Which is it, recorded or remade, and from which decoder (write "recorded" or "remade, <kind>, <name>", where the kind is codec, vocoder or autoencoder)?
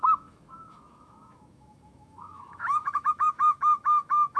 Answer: remade, autoencoder, DAC-VAE